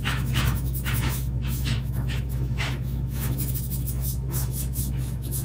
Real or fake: fake